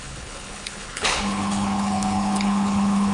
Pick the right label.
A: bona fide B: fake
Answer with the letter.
B